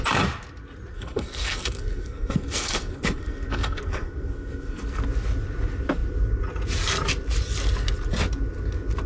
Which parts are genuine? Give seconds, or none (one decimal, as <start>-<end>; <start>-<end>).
0.0-0.9; 5.0-9.1